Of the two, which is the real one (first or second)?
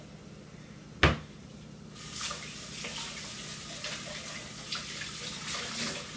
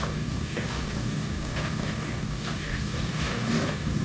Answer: first